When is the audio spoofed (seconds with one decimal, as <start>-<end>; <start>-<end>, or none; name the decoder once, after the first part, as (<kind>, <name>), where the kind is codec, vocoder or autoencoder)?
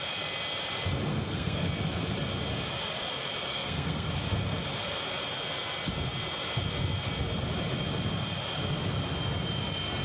1.1-1.7 (codec, SNAC); 3.5-4.1